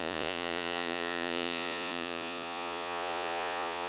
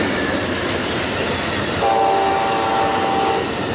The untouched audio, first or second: second